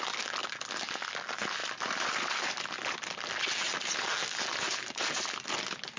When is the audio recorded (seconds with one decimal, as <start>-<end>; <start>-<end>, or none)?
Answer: 0.0-1.6; 2.6-4.5; 5.2-6.0